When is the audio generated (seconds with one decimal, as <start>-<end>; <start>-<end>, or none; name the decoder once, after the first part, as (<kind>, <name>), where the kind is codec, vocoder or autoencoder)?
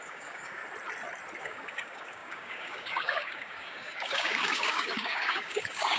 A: 0.0-0.6 (codec, DAC); 1.4-6.0